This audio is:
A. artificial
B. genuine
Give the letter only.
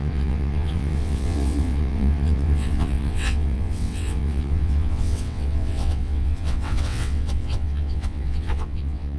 A